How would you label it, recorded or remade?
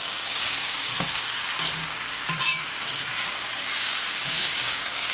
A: remade